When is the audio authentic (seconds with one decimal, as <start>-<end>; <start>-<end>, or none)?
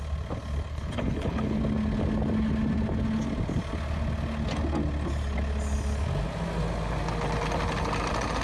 0.0-0.7; 1.6-8.4